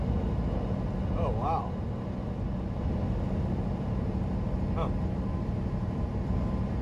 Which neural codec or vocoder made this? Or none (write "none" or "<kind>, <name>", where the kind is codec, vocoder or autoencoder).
none